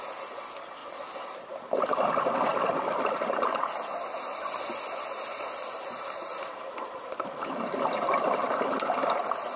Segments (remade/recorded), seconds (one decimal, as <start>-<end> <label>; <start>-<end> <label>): 0.0-0.8 recorded; 0.8-1.6 remade; 1.6-2.5 recorded; 2.5-7.2 remade; 7.2-9.6 recorded